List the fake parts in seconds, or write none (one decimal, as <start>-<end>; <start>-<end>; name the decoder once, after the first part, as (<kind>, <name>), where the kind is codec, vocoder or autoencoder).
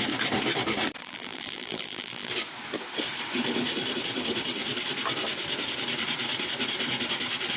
1.0-2.3 (vocoder, BigVGAN v2)